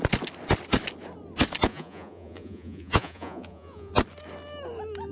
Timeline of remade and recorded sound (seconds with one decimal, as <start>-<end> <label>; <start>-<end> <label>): 0.0-1.7 recorded; 1.7-3.9 remade; 3.9-5.1 recorded